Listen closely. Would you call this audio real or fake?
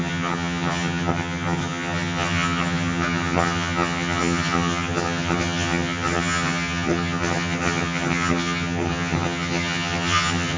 fake